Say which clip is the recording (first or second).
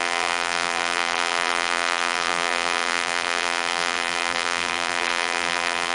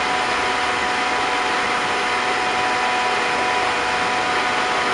second